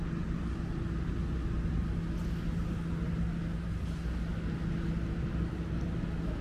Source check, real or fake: real